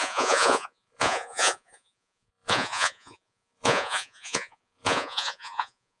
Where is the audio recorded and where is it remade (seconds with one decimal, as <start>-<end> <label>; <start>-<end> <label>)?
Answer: 0.0-6.0 remade